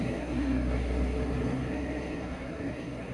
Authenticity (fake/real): fake